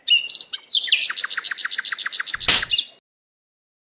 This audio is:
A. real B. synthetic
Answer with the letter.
A